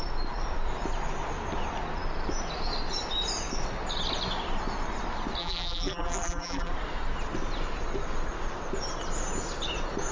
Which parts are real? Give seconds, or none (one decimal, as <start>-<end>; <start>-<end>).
0.0-5.4; 6.7-10.1